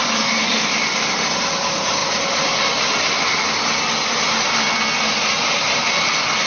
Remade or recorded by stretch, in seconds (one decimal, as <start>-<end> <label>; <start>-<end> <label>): 0.0-6.5 recorded